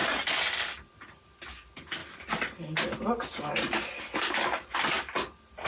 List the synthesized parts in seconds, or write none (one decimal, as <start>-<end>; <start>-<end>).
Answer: none